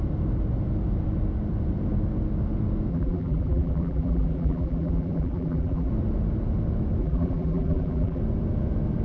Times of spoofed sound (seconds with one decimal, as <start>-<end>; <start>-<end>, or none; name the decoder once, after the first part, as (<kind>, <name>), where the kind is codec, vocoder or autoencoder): 2.9-5.9 (vocoder, BigVGAN v2); 7.0-8.2